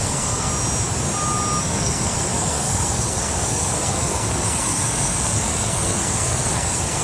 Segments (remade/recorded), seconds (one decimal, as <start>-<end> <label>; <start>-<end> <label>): 0.0-0.5 remade; 0.5-1.6 recorded; 1.6-7.0 remade